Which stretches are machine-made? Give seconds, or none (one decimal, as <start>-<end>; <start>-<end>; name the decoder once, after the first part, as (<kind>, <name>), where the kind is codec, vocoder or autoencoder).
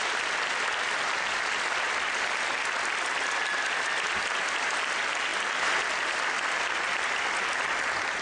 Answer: none